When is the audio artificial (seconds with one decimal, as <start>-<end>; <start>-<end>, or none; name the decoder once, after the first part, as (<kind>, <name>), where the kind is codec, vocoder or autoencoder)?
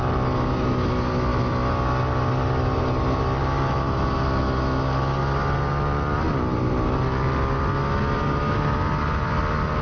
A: none